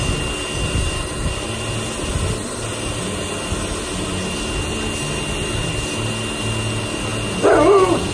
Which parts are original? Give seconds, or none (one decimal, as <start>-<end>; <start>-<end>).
0.0-8.1